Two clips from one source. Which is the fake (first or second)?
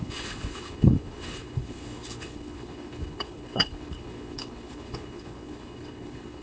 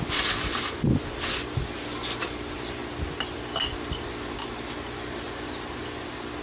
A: first